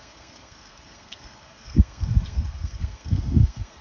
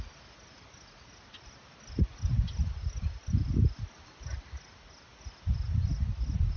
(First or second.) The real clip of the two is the second